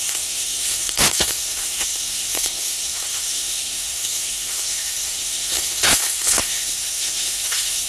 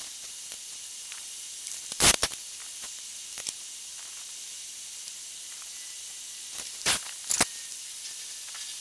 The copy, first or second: first